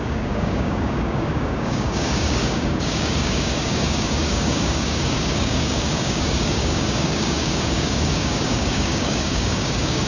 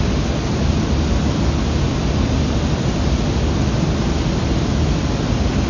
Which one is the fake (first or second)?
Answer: first